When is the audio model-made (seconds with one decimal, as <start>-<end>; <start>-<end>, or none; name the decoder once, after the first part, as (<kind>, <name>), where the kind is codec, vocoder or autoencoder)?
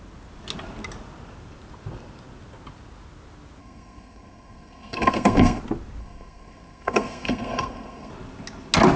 3.6-5.6 (codec, SNAC); 6.0-8.1